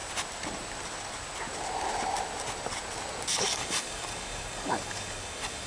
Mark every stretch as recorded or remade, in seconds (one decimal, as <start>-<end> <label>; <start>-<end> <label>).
0.0-3.4 recorded; 3.4-5.7 remade